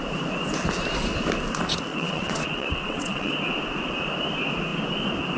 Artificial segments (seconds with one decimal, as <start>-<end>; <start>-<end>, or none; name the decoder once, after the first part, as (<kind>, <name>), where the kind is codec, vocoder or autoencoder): 1.9-3.3 (vocoder, WaveNeXt)